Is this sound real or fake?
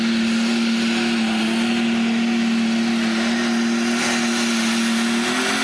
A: real